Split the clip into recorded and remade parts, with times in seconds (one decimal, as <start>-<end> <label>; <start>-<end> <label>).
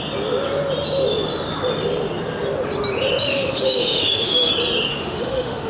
0.0-3.2 recorded; 3.2-4.5 remade; 4.5-4.9 recorded; 4.9-5.7 remade